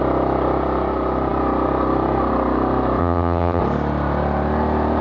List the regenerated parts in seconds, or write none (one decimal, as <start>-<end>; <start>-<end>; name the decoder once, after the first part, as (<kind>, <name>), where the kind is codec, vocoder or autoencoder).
3.0-3.6 (vocoder, HiFi-GAN)